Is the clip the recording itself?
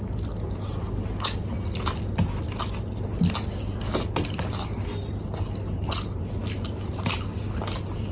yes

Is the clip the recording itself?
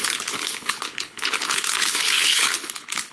no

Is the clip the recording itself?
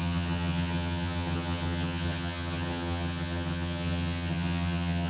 no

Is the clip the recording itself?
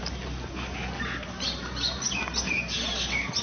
yes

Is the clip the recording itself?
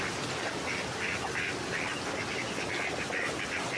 yes